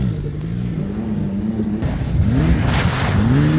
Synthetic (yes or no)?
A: no